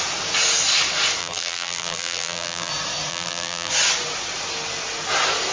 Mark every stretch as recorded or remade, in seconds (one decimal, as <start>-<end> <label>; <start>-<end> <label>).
0.0-1.2 recorded; 1.2-2.7 remade; 2.7-3.1 recorded; 3.1-3.7 remade; 3.7-5.5 recorded